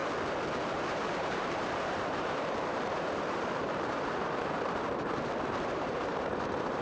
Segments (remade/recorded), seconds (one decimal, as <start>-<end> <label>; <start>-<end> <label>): 0.0-0.9 recorded; 0.9-6.8 remade